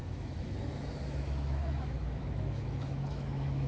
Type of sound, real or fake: fake